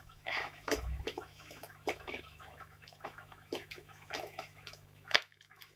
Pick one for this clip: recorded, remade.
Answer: remade